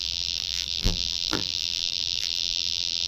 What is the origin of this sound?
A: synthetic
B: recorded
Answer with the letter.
A